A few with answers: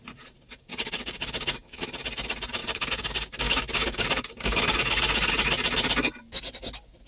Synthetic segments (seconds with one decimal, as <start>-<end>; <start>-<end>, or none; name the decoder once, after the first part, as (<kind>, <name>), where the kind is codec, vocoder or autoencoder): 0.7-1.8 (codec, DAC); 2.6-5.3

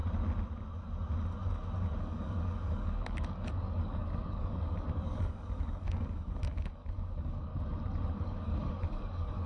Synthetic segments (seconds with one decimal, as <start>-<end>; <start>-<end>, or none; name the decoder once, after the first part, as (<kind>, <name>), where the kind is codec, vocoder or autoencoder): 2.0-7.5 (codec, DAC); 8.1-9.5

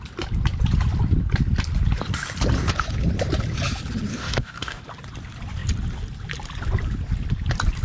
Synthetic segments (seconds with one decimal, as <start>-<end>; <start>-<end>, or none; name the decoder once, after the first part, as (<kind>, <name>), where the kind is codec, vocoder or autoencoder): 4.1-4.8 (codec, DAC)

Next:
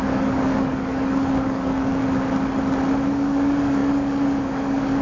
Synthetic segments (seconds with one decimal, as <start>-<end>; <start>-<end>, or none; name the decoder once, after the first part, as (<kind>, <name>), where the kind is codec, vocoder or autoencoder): 0.0-2.0 (codec, DAC); 3.1-5.0